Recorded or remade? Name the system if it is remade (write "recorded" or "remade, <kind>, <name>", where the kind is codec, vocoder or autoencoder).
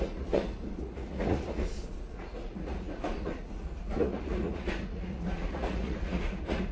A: remade, vocoder, Vocos